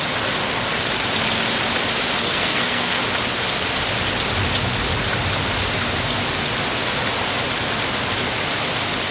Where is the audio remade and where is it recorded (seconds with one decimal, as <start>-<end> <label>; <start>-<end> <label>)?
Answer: 0.0-2.2 recorded; 2.2-3.0 remade; 3.0-9.1 recorded